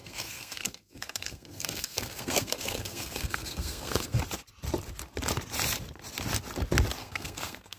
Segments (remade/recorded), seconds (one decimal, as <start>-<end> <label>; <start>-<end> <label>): 0.0-4.2 remade; 4.2-7.0 recorded; 7.0-7.8 remade